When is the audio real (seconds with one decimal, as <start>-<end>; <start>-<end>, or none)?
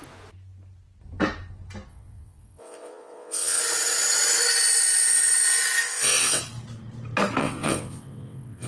0.0-1.9; 3.6-5.8; 6.4-7.4